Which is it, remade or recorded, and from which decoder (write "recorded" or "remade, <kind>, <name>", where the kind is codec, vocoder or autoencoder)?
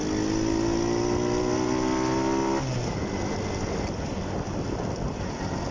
recorded